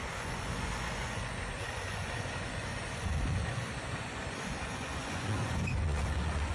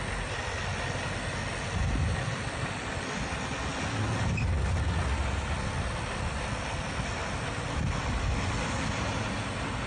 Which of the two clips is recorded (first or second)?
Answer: second